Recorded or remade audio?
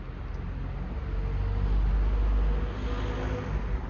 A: recorded